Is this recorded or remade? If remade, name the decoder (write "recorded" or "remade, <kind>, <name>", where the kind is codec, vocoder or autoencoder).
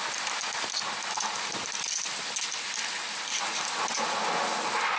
recorded